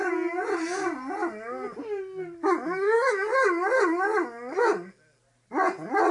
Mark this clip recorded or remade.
recorded